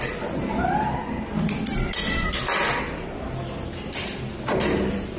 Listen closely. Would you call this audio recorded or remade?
recorded